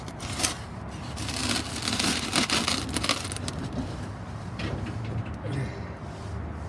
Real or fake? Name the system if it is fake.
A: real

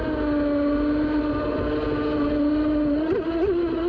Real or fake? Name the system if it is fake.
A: real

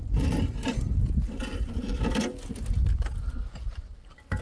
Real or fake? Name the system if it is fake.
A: real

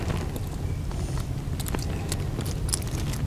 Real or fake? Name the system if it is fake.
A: real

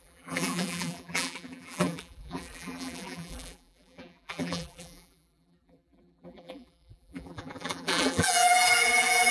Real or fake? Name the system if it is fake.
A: fake, vocoder, BigVGAN v2